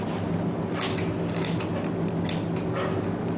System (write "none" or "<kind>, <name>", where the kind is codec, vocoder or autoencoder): none